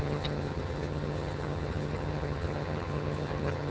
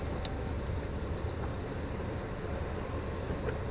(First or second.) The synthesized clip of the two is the first